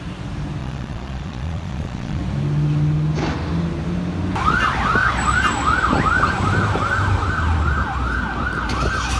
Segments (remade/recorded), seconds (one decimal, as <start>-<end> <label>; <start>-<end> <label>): 0.0-0.6 recorded; 0.6-2.2 remade; 2.2-9.2 recorded